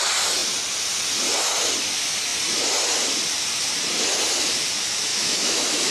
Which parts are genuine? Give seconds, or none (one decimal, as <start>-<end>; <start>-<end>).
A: 0.0-5.1